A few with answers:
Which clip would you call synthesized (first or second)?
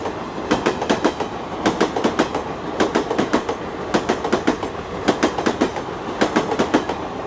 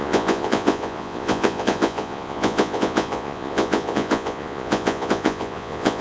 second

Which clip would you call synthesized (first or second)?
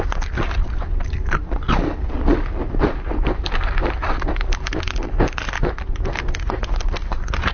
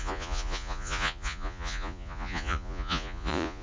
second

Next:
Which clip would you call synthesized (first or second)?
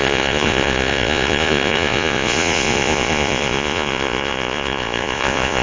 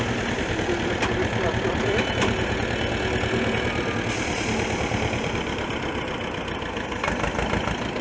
first